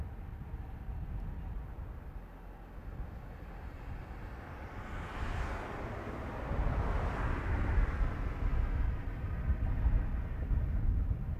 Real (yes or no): yes